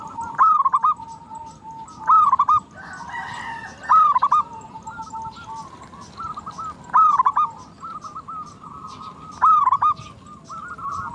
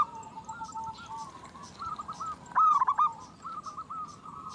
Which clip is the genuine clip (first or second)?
first